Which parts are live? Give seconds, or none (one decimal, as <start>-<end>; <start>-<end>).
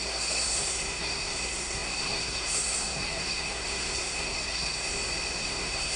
4.9-5.4